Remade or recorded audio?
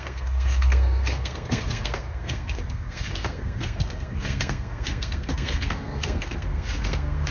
remade